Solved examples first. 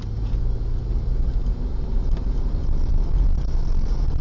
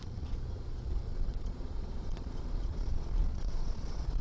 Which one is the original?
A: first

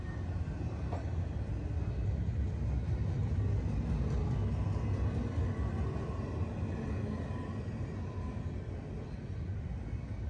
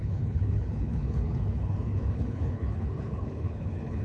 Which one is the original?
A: first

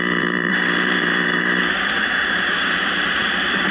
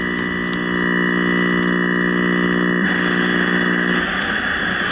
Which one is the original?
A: second